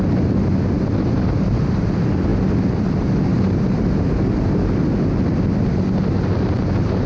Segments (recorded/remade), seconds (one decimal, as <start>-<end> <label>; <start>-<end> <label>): 0.0-7.1 recorded